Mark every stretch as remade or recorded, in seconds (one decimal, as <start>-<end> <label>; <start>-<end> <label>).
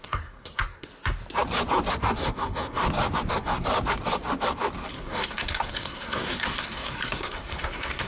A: 0.0-0.9 remade; 0.9-1.9 recorded; 1.9-2.8 remade; 2.8-3.3 recorded; 3.3-3.7 remade; 3.7-4.9 recorded; 4.9-8.1 remade